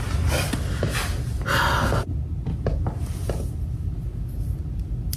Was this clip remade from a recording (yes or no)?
no